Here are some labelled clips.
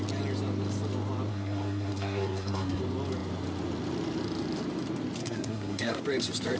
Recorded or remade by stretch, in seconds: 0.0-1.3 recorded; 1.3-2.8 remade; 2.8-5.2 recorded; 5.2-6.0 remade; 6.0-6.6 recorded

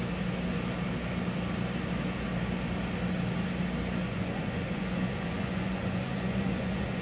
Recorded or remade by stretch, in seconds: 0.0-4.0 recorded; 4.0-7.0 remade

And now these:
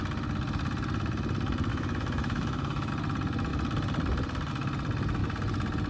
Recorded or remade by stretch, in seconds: 0.0-1.7 recorded; 1.7-2.9 remade; 2.9-5.9 recorded

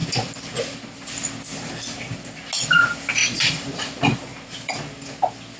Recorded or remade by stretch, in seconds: 0.0-0.5 remade; 0.5-3.2 recorded; 3.2-3.8 remade; 3.8-4.3 recorded; 4.3-4.8 remade; 4.8-5.6 recorded

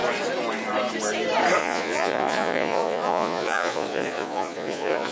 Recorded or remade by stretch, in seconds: 0.0-1.6 recorded; 1.6-5.1 remade

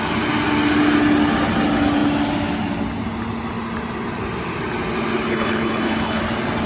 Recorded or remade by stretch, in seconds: 0.0-5.3 recorded; 5.3-6.2 remade; 6.2-6.7 recorded

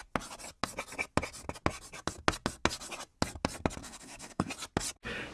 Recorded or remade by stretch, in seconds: 0.0-3.8 recorded; 3.8-4.5 remade; 4.5-5.3 recorded